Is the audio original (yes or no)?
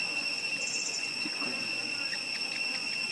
no